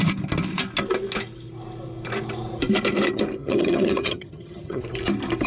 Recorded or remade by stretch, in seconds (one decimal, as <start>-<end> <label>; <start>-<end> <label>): 0.0-3.4 recorded; 3.4-4.8 remade; 4.8-5.5 recorded